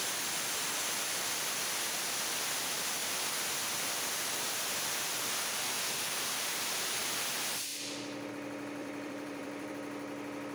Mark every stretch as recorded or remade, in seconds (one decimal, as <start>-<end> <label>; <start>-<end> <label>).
0.0-8.8 recorded; 8.8-9.7 remade; 9.7-10.5 recorded